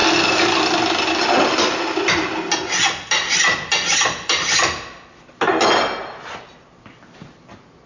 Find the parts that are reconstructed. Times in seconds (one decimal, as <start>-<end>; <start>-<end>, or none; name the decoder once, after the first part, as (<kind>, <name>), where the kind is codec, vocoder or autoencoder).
none